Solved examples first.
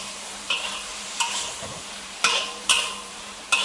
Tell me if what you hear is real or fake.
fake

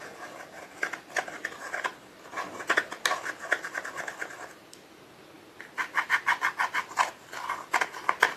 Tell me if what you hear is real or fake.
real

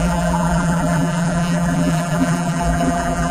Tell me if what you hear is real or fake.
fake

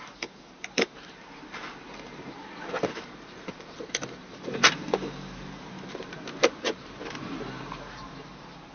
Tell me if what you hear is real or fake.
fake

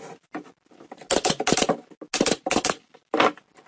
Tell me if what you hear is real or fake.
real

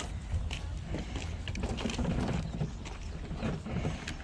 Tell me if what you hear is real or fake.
real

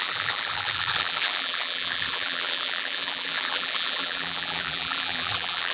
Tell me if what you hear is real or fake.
fake